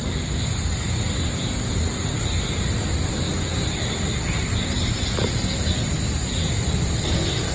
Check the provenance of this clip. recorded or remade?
recorded